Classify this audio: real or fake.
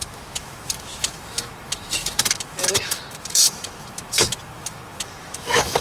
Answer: fake